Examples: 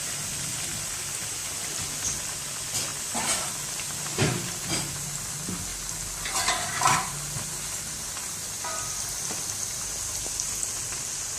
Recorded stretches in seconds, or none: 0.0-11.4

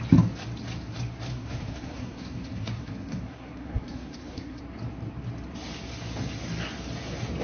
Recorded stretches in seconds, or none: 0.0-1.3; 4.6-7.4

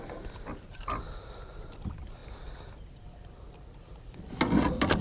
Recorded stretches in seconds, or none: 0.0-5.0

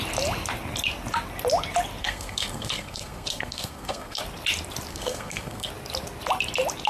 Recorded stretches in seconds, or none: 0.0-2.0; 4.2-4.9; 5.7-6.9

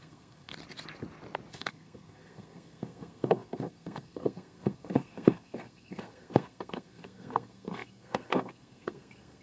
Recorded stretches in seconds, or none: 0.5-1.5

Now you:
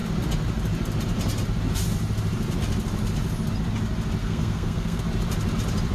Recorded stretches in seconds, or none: 0.0-4.2; 5.0-5.9

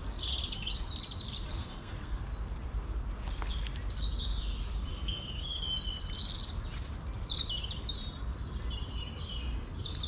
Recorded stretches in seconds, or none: 0.0-1.6; 2.2-4.9; 5.6-10.1